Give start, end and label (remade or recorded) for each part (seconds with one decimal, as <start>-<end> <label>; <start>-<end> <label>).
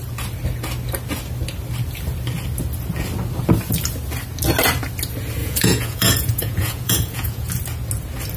0.0-5.4 recorded; 5.4-7.5 remade; 7.5-8.4 recorded